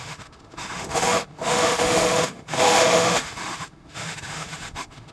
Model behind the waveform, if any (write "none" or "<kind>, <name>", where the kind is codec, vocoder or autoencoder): autoencoder, DAC-VAE